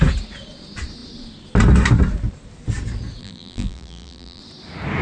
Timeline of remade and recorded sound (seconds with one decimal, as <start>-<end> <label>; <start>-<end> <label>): 0.0-3.2 recorded; 3.2-4.4 remade; 4.4-5.0 recorded